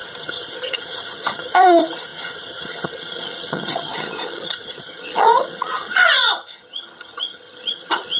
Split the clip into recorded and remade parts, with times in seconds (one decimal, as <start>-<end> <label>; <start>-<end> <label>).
0.0-8.2 remade